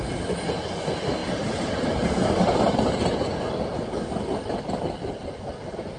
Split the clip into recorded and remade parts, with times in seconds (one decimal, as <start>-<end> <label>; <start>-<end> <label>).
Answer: 0.0-6.0 recorded